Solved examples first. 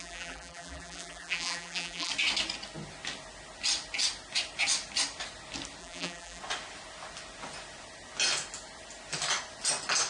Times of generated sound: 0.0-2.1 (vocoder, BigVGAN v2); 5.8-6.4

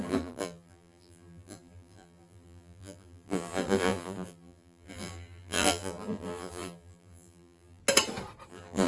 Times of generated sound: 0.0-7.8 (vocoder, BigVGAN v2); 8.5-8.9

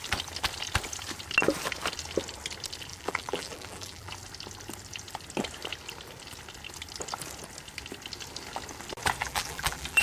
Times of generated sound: 2.9-4.1 (vocoder, BigVGAN v2); 9.2-10.0

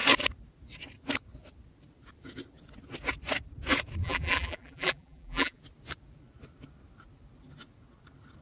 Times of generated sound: 4.0-5.6 (vocoder, BigVGAN v2)